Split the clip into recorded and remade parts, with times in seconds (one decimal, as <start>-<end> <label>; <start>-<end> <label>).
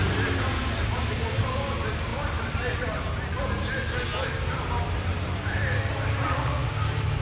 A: 0.0-6.2 recorded; 6.2-6.7 remade; 6.7-7.2 recorded